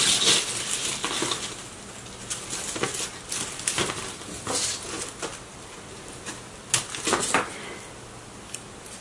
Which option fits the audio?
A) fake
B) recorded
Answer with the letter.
B